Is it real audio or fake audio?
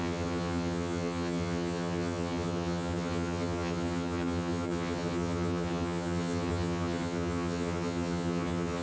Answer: fake